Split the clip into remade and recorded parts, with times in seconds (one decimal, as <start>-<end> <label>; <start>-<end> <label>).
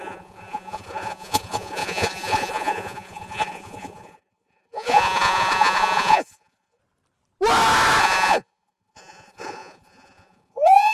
0.0-6.8 remade; 6.8-8.0 recorded; 8.0-10.9 remade